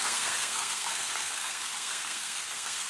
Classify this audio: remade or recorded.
remade